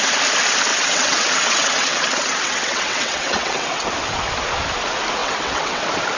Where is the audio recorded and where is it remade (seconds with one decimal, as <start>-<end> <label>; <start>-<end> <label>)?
0.0-0.7 recorded; 0.7-3.9 remade; 3.9-5.2 recorded; 5.2-5.8 remade; 5.8-6.2 recorded